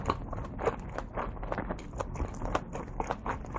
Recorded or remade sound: recorded